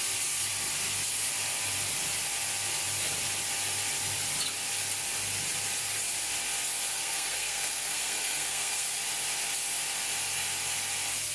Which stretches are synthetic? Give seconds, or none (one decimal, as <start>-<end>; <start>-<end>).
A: 6.9-9.0